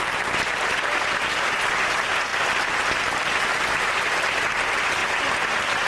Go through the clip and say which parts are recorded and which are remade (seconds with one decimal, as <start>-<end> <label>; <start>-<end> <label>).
0.0-5.9 recorded